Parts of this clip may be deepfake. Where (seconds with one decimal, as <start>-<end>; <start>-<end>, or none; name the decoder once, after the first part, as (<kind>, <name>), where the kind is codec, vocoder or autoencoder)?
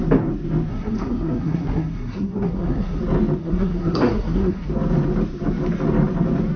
0.7-3.0 (codec, SNAC); 3.4-4.7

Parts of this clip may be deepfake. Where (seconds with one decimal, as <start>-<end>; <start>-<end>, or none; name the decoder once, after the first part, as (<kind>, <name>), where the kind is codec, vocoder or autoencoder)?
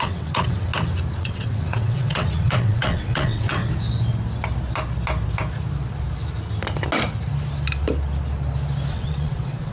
0.0-0.7 (vocoder, WaveNeXt); 1.2-3.6; 8.9-9.7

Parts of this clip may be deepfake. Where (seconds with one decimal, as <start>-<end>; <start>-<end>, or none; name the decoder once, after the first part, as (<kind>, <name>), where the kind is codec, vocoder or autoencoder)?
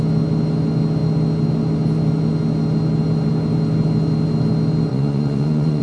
4.9-5.8 (vocoder, Vocos)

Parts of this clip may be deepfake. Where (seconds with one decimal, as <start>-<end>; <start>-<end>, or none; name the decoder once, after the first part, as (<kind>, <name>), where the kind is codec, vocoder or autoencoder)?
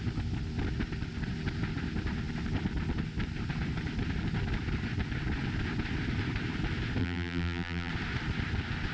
7.0-7.9 (vocoder, BigVGAN v2)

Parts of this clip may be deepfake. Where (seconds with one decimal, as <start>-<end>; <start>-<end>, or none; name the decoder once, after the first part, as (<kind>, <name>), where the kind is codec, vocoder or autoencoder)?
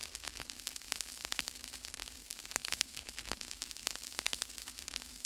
0.0-5.3 (codec, SNAC)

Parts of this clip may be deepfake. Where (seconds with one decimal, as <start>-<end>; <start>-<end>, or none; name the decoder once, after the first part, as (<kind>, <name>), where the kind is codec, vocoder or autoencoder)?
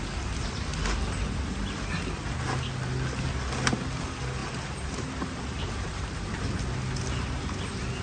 4.4-6.4 (vocoder, BigVGAN v2)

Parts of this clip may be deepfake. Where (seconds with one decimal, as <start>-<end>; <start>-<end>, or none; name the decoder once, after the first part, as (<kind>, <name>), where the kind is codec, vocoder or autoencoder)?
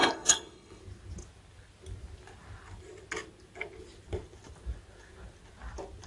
0.0-0.8 (codec, HILCodec)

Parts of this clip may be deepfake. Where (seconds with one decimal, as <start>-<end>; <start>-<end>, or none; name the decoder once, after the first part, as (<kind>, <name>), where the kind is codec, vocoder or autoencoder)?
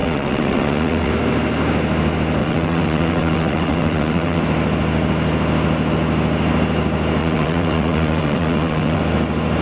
0.0-1.1 (vocoder, WaveNeXt); 2.4-4.4; 7.2-9.0